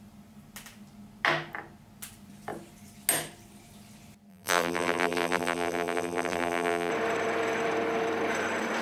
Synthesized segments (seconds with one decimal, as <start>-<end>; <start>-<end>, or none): 4.3-6.9